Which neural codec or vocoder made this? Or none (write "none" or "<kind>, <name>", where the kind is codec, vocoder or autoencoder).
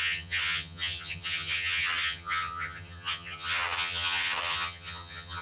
vocoder, HiFi-GAN